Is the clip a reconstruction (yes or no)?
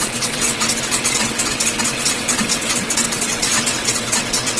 yes